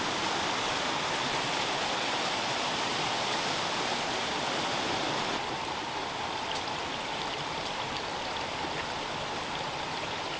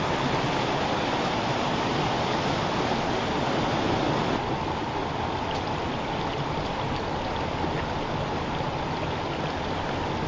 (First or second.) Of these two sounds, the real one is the second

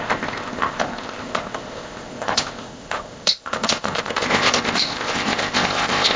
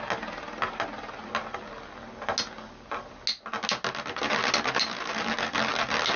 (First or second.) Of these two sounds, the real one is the second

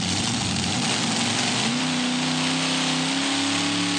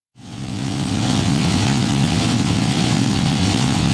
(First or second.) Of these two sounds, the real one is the first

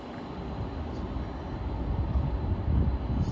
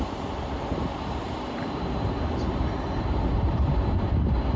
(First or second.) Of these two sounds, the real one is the first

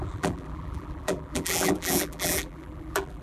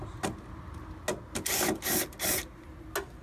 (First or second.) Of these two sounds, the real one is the second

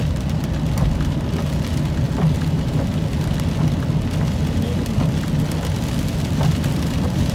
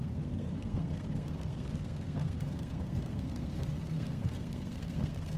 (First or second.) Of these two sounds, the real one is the first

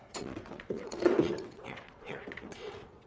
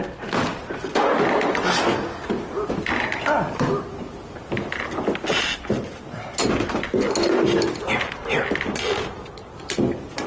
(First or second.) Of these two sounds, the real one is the second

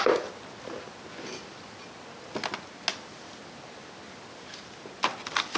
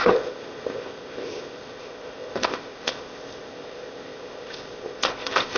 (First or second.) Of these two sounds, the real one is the first